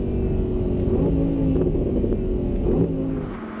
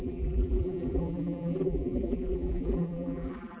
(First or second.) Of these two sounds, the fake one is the second